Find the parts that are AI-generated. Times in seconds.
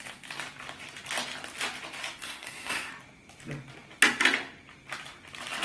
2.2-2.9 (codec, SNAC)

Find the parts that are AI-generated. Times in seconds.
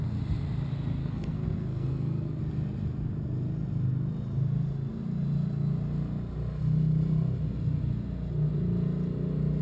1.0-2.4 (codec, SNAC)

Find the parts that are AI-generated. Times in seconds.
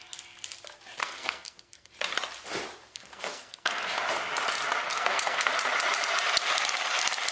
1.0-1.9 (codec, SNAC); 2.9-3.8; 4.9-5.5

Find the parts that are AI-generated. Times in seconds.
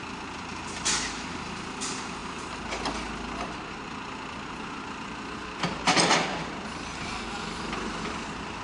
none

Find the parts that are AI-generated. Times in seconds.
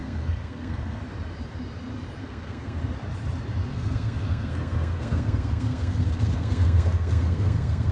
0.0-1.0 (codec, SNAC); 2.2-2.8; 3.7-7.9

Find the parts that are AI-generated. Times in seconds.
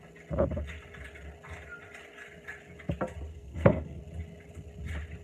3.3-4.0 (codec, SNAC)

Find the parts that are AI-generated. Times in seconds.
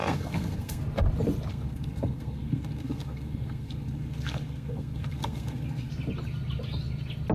0.0-0.8 (codec, SNAC); 1.5-5.9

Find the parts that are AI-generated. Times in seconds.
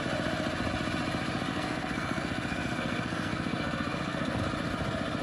1.5-4.4 (codec, SNAC)